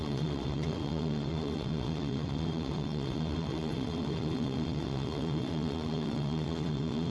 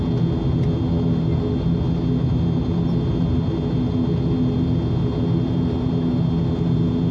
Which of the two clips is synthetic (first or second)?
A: first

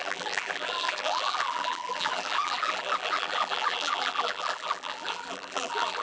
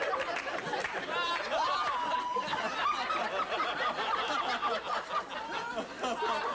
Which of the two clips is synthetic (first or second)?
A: first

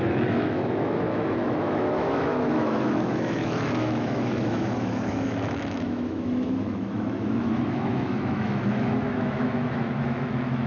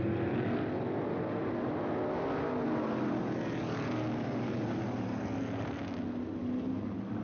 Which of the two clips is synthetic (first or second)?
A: first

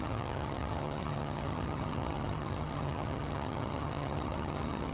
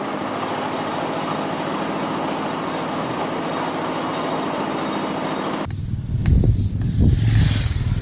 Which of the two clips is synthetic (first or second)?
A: first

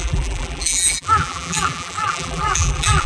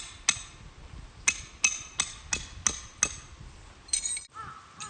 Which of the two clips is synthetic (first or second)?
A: first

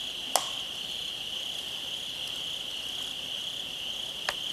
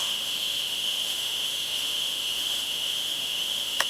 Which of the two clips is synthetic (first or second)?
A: second